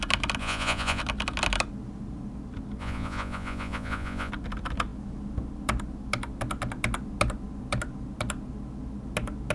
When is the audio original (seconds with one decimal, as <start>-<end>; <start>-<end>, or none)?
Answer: 0.0-0.4; 1.0-2.8; 4.3-9.5